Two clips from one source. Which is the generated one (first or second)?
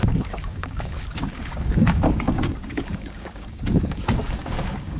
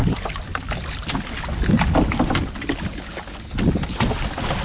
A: first